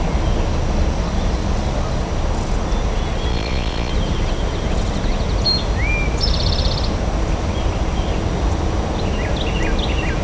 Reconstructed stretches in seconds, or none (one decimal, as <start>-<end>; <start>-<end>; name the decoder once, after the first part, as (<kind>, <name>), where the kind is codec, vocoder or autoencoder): 3.3-3.9 (vocoder, Vocos)